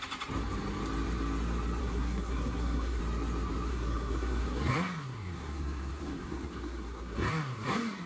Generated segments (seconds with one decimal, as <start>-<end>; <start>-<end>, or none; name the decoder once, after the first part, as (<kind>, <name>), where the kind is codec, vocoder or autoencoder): 1.8-3.0 (codec, SNAC); 3.7-8.1